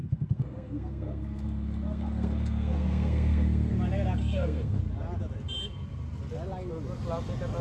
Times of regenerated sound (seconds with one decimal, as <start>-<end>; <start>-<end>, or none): 0.0-3.7; 4.2-4.8